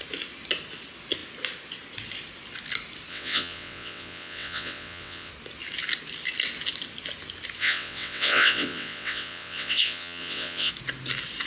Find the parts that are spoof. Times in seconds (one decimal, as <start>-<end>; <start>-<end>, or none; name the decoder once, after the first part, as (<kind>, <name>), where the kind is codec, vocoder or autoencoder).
3.1-5.3 (vocoder, WaveNeXt); 7.6-10.7